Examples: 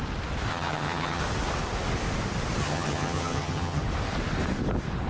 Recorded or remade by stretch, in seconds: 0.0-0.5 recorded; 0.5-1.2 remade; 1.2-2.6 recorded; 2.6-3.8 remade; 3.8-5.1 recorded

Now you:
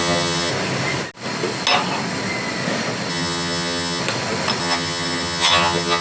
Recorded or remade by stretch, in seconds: 0.0-0.5 remade; 0.5-3.1 recorded; 3.1-4.0 remade; 4.0-4.6 recorded; 4.6-6.0 remade

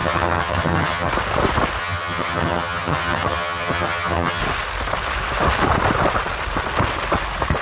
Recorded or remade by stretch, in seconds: 0.0-1.1 remade; 1.1-1.8 recorded; 1.8-4.4 remade; 4.4-7.6 recorded

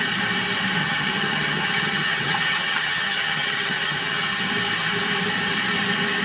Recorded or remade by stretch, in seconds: 0.0-0.8 recorded; 0.8-4.5 remade; 4.5-6.2 recorded

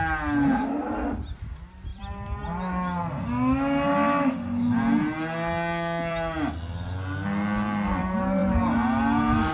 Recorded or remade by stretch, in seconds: 0.0-9.5 recorded